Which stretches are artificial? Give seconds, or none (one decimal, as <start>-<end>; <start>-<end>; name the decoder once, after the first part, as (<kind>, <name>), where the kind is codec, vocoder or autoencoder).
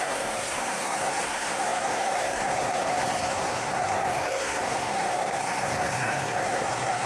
0.0-7.1 (codec, SNAC)